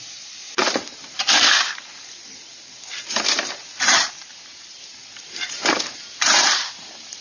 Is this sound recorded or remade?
remade